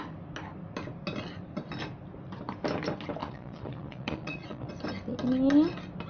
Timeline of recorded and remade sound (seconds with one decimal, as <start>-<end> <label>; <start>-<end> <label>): 0.0-3.2 recorded; 3.2-4.7 remade; 4.7-6.1 recorded